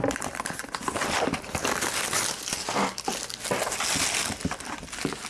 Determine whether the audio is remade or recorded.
recorded